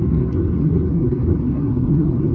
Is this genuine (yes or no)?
no